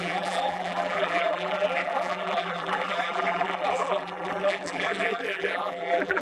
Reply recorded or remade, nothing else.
remade